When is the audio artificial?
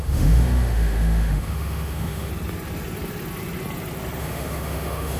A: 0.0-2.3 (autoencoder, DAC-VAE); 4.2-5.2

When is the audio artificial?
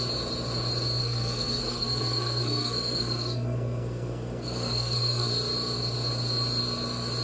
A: 1.0-5.3 (codec, SNAC)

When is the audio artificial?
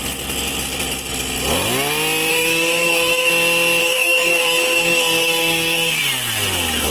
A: 2.3-3.3 (codec, DAC); 3.8-6.0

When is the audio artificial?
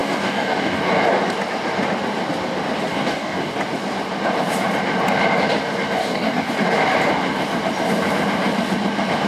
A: 0.0-0.9 (codec, DAC); 2.9-3.5; 6.0-6.5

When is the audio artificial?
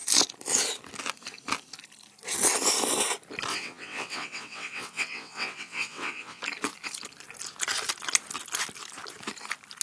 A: 3.5-6.4 (vocoder, WaveNeXt)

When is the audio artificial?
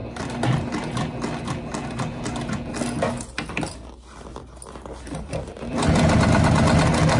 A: none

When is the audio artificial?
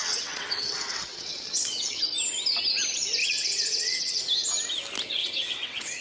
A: 0.0-2.0 (vocoder, WaveNeXt); 3.2-4.2; 5.2-6.0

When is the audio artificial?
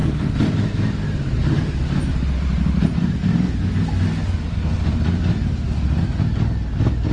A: 0.0-3.7 (vocoder, BigVGAN v2)